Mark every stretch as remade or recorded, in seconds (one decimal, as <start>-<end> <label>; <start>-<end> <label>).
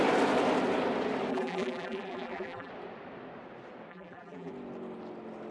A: 0.0-1.3 recorded; 1.3-2.7 remade; 2.7-3.9 recorded; 3.9-4.5 remade; 4.5-5.5 recorded